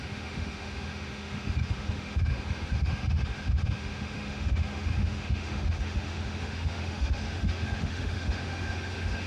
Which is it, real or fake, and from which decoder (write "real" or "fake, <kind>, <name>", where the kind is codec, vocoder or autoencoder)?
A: fake, autoencoder, DAC-VAE